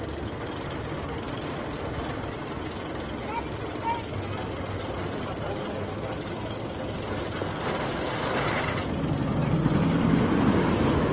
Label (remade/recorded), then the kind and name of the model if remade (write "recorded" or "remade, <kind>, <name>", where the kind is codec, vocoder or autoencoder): recorded